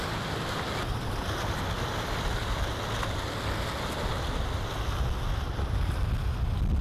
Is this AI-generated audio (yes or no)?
no